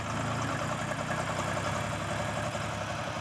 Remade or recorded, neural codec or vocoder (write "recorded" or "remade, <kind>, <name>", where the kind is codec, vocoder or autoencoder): recorded